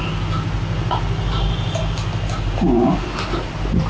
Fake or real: real